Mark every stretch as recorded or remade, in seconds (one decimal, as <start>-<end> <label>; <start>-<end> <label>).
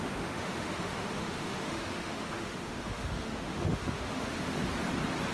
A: 0.0-4.6 remade; 4.6-5.3 recorded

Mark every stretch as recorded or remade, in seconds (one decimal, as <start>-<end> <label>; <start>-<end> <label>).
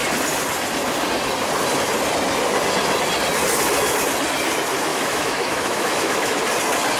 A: 0.0-4.9 recorded; 4.9-6.4 remade; 6.4-7.0 recorded